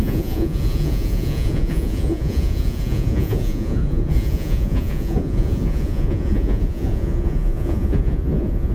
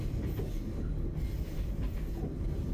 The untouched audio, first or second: second